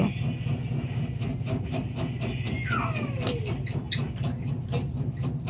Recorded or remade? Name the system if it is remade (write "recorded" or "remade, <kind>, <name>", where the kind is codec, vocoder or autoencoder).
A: recorded